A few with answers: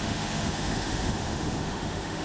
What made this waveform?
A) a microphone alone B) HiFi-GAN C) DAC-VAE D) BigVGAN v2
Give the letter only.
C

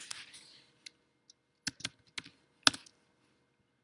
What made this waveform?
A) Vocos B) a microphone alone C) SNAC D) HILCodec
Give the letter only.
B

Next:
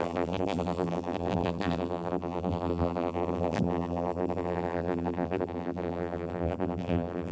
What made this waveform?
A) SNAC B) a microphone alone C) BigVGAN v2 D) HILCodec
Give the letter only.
C